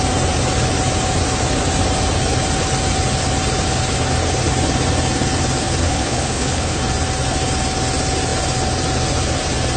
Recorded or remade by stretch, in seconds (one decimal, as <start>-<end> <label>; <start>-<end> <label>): 0.0-5.8 recorded; 5.8-6.8 remade; 6.8-9.8 recorded

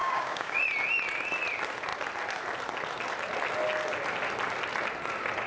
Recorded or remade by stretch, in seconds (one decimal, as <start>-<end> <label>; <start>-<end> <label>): 0.0-0.6 remade; 0.6-5.5 recorded

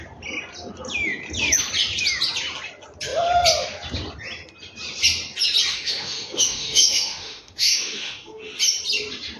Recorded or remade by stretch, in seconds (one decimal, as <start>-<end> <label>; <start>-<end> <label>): 0.0-5.7 recorded; 5.7-8.4 remade; 8.4-9.4 recorded

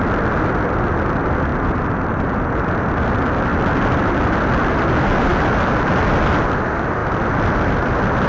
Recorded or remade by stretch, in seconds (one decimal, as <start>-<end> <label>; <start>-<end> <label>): 0.0-8.3 recorded

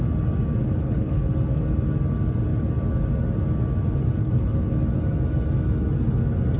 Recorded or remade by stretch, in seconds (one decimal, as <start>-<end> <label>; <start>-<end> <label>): 0.0-0.6 recorded; 0.6-1.3 remade; 1.3-4.2 recorded; 4.2-4.7 remade; 4.7-6.6 recorded

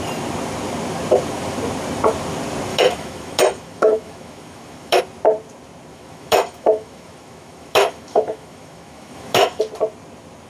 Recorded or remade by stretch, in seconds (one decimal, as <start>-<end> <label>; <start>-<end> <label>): 0.0-2.7 recorded; 2.7-5.0 remade; 5.0-5.9 recorded; 5.9-9.6 remade; 9.6-10.5 recorded

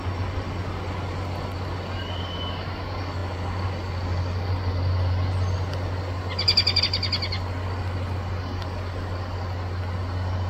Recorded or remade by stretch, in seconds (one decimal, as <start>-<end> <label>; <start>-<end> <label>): 0.0-10.5 recorded

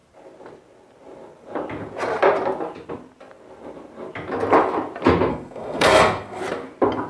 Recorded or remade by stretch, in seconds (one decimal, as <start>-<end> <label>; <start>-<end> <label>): 0.0-5.3 recorded; 5.3-6.4 remade; 6.4-7.1 recorded